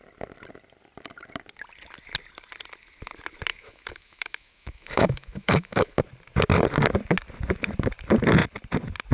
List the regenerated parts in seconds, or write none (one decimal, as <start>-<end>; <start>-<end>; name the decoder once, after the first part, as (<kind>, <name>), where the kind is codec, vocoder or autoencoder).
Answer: 3.5-6.0 (autoencoder, DAC-VAE)